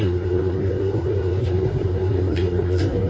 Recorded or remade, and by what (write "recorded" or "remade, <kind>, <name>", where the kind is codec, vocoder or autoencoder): remade, codec, SNAC